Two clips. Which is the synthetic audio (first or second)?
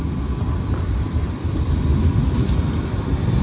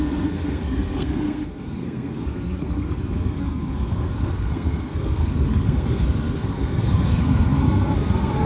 second